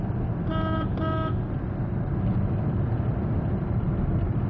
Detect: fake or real real